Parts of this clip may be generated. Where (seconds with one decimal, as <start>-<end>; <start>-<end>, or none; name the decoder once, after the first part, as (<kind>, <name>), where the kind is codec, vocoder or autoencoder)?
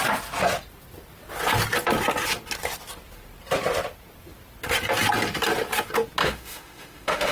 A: 6.2-7.3 (autoencoder, DAC-VAE)